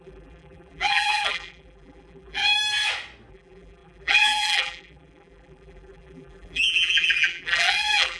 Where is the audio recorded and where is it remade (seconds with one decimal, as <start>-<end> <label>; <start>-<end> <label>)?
0.0-2.4 remade; 2.4-3.3 recorded; 3.3-8.2 remade